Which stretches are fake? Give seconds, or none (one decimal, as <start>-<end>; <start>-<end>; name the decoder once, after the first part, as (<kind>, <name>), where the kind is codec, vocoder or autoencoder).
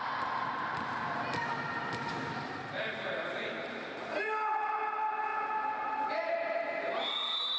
none